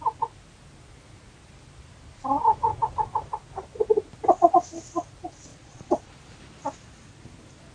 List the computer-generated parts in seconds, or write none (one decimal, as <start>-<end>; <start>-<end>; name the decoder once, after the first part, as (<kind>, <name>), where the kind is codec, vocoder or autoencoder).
5.5-6.1 (vocoder, Vocos)